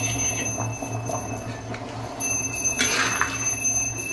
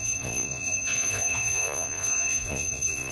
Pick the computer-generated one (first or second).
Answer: second